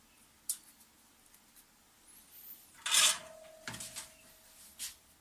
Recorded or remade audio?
recorded